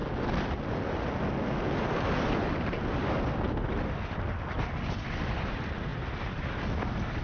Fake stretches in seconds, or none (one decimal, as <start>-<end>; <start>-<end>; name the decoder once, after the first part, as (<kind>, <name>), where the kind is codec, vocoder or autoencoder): none